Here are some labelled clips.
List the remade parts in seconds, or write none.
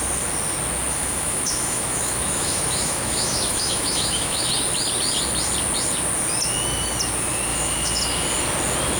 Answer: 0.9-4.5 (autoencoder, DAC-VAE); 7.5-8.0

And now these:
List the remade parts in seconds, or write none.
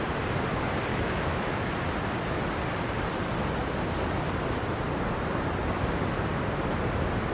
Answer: 0.9-1.7 (autoencoder, DAC-VAE)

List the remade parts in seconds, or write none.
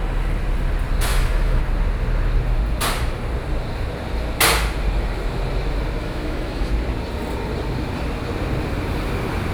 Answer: 1.1-1.6 (autoencoder, DAC-VAE); 6.0-6.7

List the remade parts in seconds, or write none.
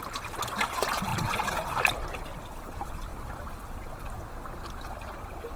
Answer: none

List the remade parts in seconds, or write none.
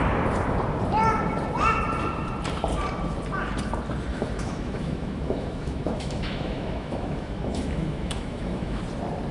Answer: 4.1-8.8 (autoencoder, DAC-VAE)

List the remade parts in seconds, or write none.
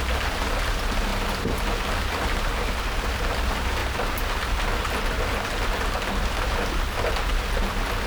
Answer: none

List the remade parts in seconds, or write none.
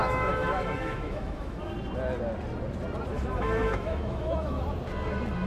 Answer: 0.0-1.7 (autoencoder, DAC-VAE); 3.1-4.6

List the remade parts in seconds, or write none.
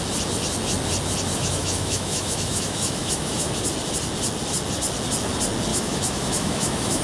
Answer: 1.3-3.5 (autoencoder, DAC-VAE); 5.7-7.0